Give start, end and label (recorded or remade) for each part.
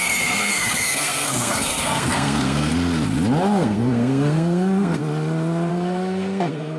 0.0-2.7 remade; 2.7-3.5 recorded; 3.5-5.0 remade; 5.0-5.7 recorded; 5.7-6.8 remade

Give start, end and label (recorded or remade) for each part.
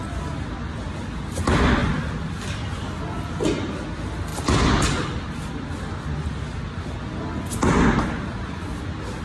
0.0-9.2 recorded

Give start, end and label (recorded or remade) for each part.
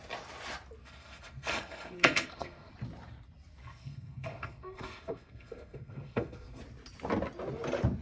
0.0-0.8 recorded; 0.8-2.7 remade; 2.7-3.6 recorded; 3.6-6.6 remade; 6.6-8.0 recorded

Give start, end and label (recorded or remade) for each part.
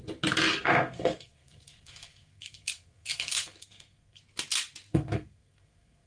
0.0-0.5 recorded; 0.5-4.2 remade; 4.2-4.9 recorded; 4.9-6.1 remade